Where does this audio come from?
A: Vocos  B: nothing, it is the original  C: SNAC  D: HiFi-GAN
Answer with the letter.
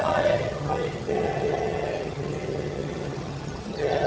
D